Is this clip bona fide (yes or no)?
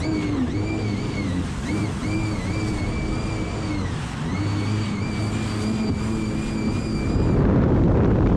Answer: yes